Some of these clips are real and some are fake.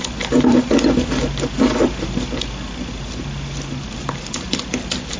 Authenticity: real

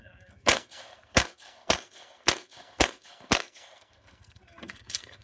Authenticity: fake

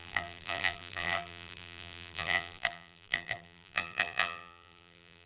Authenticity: fake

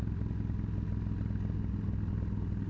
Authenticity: real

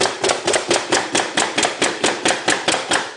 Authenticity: fake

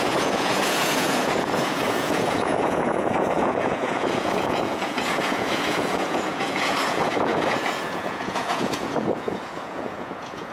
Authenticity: fake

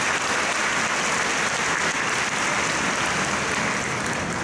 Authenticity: real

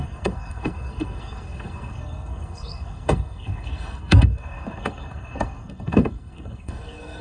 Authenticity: fake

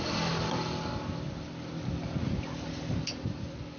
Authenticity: real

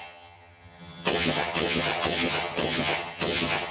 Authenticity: fake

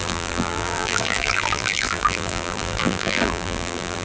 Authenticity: fake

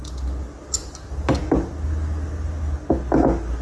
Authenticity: real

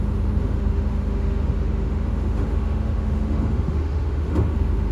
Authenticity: fake